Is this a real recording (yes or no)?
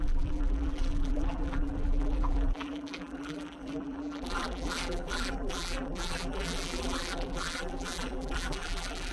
no